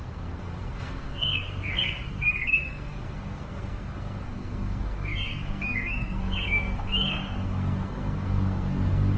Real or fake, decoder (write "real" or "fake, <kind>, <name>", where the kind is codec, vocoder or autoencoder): fake, codec, SNAC